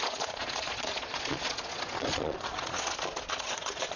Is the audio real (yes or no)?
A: no